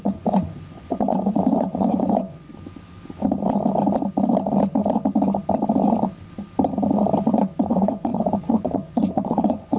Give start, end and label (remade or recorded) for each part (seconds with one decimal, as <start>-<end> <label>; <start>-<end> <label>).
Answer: 0.0-2.5 remade; 2.5-7.6 recorded; 7.6-9.8 remade